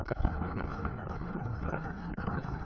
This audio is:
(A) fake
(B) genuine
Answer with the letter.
A